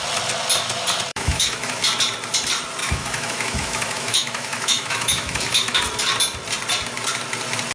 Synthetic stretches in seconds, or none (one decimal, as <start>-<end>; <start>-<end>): 1.1-1.8; 2.8-5.8